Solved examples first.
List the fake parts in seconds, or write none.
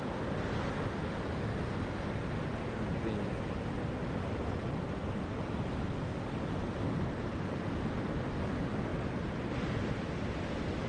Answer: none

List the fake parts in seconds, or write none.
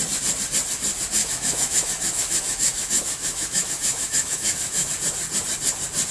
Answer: 1.2-4.9 (autoencoder, DAC-VAE)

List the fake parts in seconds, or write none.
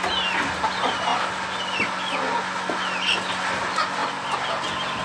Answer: none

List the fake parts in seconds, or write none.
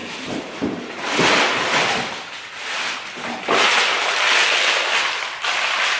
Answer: 0.0-1.1 (vocoder, BigVGAN v2)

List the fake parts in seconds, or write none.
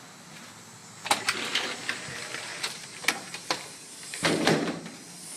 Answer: 2.5-4.8 (vocoder, BigVGAN v2)